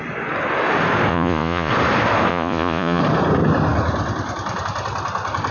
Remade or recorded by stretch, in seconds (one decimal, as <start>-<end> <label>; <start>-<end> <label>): 0.0-1.1 recorded; 1.1-1.7 remade; 1.7-2.3 recorded; 2.3-3.0 remade; 3.0-5.5 recorded